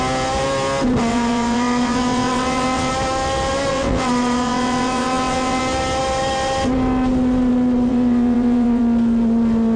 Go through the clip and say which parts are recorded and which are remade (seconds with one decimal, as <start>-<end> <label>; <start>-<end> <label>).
0.0-1.1 recorded; 1.1-2.9 remade; 2.9-3.7 recorded; 3.7-5.6 remade; 5.6-7.9 recorded; 7.9-8.8 remade; 8.8-9.8 recorded